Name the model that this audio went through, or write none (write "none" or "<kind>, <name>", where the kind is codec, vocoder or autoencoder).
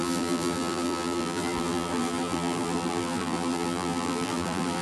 vocoder, BigVGAN v2